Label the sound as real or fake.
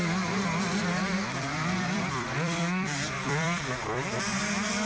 fake